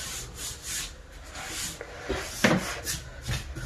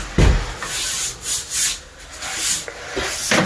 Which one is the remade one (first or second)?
first